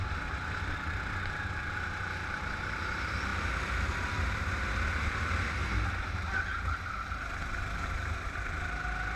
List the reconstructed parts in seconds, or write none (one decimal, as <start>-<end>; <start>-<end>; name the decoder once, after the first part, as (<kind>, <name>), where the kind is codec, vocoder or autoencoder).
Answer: none